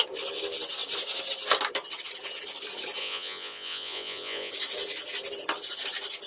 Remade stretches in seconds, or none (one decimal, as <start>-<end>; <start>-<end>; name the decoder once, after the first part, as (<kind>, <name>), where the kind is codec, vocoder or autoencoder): 3.0-4.5 (vocoder, Vocos)